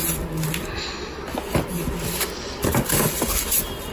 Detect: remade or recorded recorded